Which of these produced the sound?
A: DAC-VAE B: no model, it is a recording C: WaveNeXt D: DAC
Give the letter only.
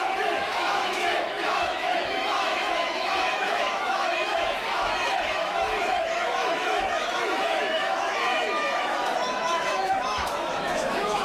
A